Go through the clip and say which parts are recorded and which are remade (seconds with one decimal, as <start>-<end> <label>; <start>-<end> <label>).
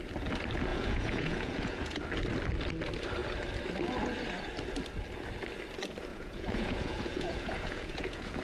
0.0-0.7 recorded; 0.7-2.0 remade; 2.0-6.1 recorded; 6.1-8.4 remade